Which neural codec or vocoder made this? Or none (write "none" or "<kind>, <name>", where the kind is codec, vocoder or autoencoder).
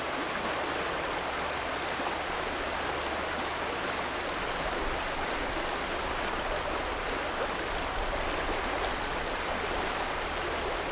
none